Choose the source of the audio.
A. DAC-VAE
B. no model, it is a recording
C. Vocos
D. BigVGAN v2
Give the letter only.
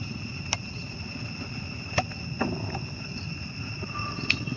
B